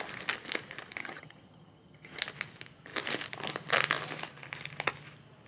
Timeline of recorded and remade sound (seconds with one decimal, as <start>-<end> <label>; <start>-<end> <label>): 0.0-1.0 recorded; 1.0-2.2 remade; 2.2-5.5 recorded